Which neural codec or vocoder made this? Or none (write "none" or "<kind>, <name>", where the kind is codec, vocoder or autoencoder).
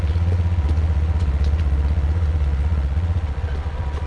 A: vocoder, Vocos